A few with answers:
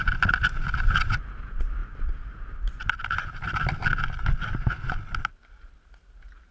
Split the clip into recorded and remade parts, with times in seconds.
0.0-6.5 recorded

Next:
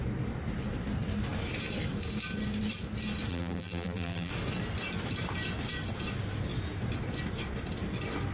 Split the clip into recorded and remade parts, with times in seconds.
0.0-3.3 recorded; 3.3-4.3 remade; 4.3-8.3 recorded

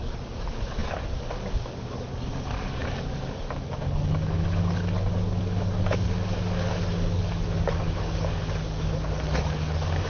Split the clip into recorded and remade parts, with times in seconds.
0.0-10.1 remade

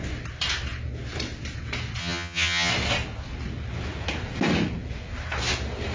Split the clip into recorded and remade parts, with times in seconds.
0.0-2.0 recorded; 2.0-2.7 remade; 2.7-5.9 recorded

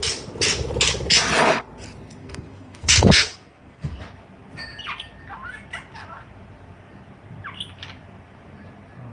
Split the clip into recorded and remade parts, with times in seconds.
0.0-2.2 recorded; 2.2-4.0 remade; 4.0-9.1 recorded

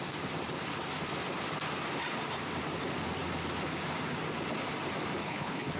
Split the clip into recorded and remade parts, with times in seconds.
0.0-5.2 recorded; 5.2-5.8 remade

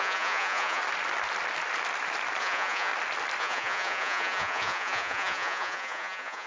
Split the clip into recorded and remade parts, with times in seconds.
0.0-0.8 remade; 0.8-2.4 recorded; 2.4-2.9 remade; 2.9-3.4 recorded; 3.4-6.5 remade